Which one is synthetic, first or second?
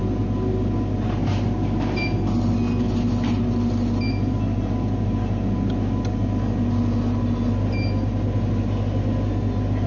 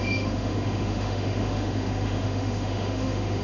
second